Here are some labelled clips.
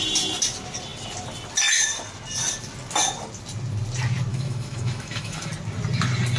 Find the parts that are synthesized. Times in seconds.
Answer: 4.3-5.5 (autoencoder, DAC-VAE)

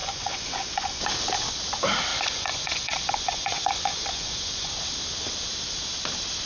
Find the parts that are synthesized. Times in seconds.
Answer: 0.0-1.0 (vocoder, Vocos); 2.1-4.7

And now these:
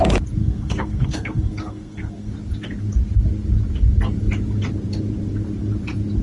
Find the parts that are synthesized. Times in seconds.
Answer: 0.4-2.3 (codec, SNAC)

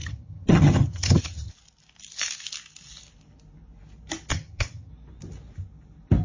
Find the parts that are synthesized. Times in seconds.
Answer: 0.0-1.5 (vocoder, HiFi-GAN); 4.3-4.9